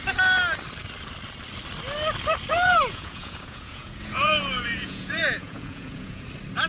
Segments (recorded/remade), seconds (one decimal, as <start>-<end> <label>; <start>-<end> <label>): 0.0-2.5 recorded; 2.5-6.2 remade; 6.2-6.7 recorded